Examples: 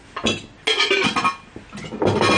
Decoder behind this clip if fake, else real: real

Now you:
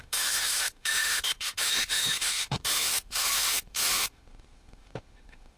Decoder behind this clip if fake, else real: fake, autoencoder, DAC-VAE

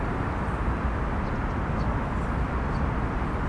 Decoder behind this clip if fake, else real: real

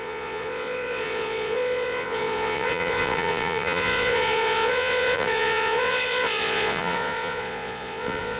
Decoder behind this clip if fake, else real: fake, vocoder, Vocos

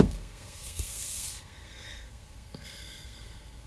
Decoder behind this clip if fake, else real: fake, codec, SNAC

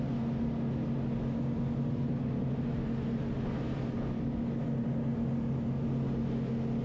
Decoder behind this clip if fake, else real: real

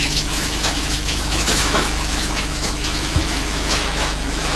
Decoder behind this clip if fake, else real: fake, autoencoder, DAC-VAE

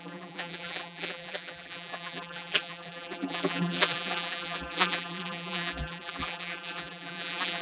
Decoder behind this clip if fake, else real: fake, vocoder, BigVGAN v2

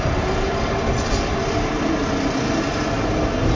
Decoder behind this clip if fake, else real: real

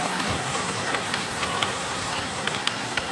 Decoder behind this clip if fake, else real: fake, codec, SNAC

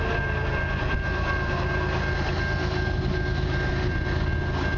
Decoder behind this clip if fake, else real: real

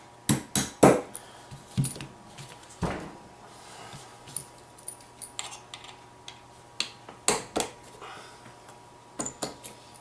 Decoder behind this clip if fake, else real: real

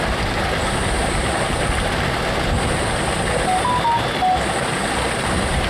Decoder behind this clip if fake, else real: real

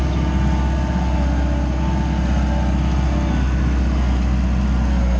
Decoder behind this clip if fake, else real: real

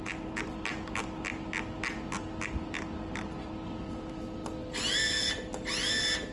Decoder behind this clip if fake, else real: real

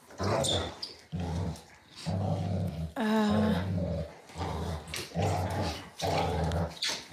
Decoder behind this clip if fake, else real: real